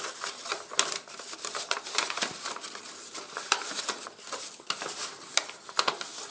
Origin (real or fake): fake